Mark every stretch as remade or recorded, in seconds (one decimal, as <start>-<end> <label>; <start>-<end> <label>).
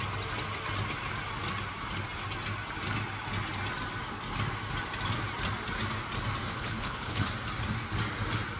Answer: 0.0-6.5 recorded; 6.5-7.3 remade; 7.3-8.6 recorded